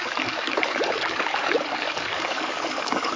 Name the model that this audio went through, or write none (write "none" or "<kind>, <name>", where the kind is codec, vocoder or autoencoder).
codec, DAC